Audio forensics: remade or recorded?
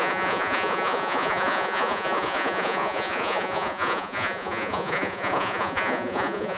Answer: remade